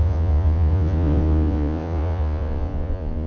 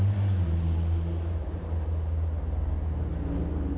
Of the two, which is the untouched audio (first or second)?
second